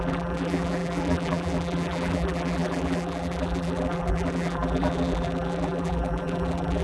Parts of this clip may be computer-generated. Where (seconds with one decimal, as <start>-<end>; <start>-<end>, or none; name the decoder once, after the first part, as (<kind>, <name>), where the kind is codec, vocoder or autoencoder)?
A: 0.0-6.8 (vocoder, BigVGAN v2)